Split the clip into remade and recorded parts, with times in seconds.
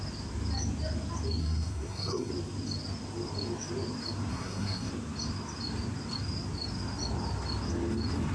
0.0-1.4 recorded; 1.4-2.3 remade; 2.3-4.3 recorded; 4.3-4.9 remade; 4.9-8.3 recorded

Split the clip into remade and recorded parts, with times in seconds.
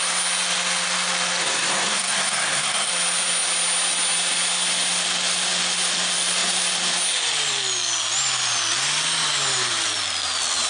0.0-1.4 recorded; 1.4-2.9 remade; 2.9-10.7 recorded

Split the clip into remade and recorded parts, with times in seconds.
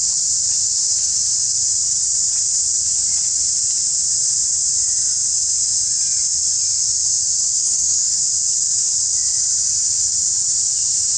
0.0-7.6 recorded; 7.6-8.2 remade; 8.2-11.2 recorded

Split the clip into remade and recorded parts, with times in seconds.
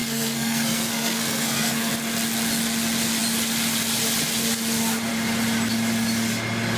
0.0-1.9 remade; 1.9-6.8 recorded